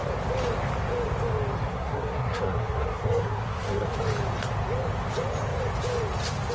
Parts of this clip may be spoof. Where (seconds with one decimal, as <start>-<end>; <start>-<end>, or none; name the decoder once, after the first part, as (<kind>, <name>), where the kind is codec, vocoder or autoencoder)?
1.7-3.9 (codec, SNAC)